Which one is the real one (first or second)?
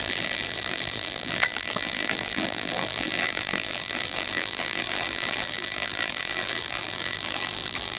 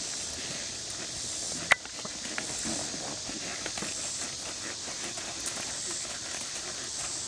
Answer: second